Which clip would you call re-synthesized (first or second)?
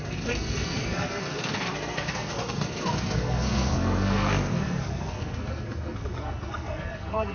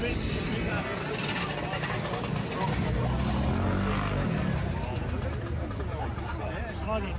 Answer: first